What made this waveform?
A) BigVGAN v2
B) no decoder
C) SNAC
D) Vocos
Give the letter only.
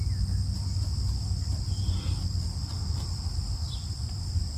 B